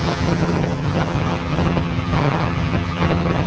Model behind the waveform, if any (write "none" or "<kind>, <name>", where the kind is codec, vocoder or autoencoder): vocoder, HiFi-GAN